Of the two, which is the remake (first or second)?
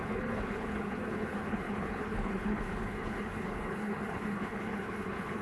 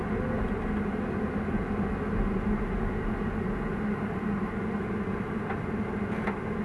first